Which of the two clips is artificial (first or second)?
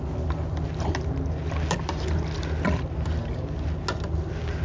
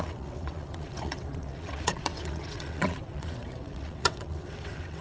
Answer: second